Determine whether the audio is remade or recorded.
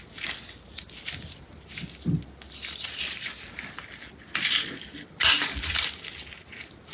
recorded